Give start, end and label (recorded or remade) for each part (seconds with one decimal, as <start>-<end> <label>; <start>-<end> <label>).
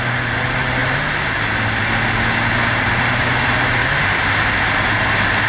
0.0-0.8 remade; 0.8-3.4 recorded; 3.4-3.8 remade; 3.8-4.5 recorded; 4.5-5.5 remade